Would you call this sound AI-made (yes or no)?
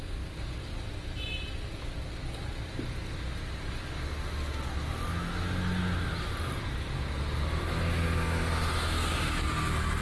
no